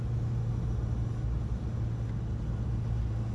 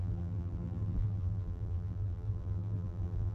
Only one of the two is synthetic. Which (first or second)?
second